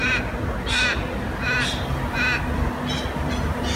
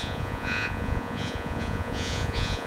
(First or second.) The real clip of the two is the first